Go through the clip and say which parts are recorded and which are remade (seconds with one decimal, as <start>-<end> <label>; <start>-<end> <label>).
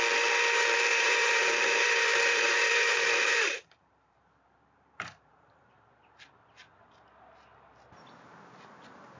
0.0-0.9 recorded; 0.9-5.7 remade; 5.7-9.2 recorded